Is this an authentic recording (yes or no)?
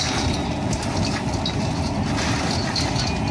yes